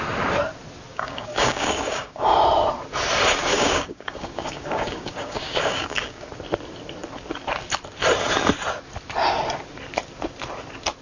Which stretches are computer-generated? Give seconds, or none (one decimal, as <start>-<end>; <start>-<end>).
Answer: 0.9-2.2; 3.5-6.3